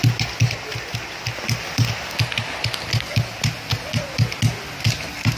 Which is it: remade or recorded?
recorded